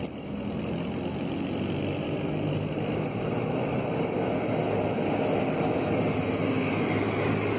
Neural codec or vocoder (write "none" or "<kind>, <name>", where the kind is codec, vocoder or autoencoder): none